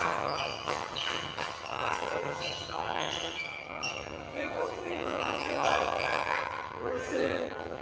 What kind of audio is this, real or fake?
fake